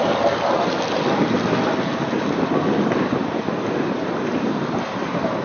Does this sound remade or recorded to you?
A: recorded